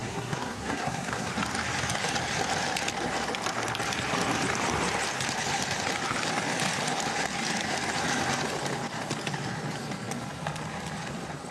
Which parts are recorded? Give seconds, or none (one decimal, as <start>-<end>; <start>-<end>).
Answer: 1.3-11.5